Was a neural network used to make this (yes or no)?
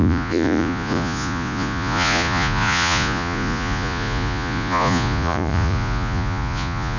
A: yes